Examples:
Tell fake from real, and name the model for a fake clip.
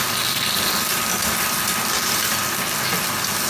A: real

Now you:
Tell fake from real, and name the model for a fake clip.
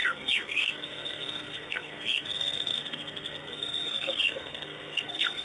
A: fake, codec, SNAC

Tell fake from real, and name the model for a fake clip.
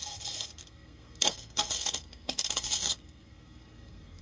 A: fake, codec, SNAC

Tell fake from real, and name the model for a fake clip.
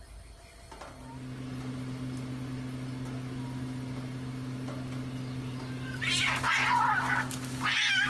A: real